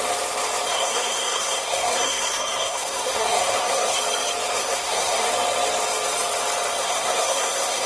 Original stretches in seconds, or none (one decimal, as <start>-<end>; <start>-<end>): 0.0-0.7; 4.0-4.6; 5.3-6.8